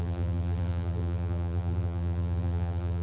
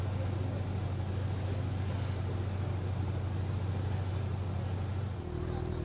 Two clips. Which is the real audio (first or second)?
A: second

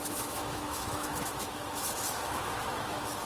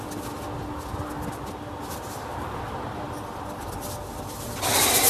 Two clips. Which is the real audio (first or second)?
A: second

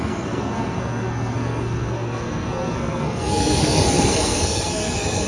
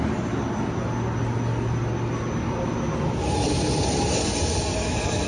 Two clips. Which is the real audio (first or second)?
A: second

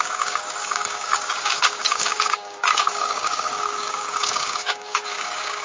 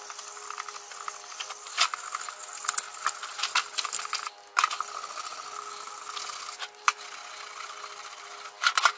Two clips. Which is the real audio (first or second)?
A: second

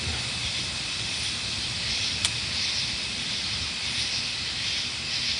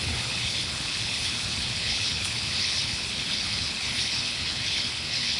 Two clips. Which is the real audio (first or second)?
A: first